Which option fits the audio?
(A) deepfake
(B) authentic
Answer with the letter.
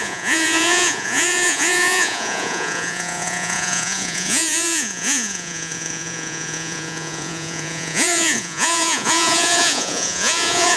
A